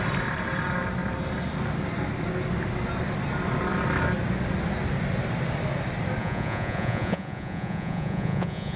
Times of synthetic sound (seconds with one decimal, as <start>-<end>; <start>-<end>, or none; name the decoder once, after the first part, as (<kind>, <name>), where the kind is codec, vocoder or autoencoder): 6.2-8.8 (vocoder, Vocos)

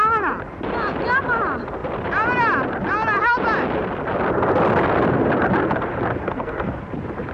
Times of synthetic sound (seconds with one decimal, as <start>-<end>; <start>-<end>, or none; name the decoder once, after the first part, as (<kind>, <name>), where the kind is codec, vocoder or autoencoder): 6.2-6.8 (codec, SNAC)

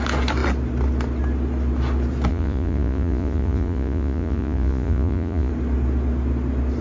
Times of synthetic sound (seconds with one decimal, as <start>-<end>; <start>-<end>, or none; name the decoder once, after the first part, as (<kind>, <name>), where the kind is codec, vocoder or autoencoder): 2.3-5.5 (vocoder, Vocos)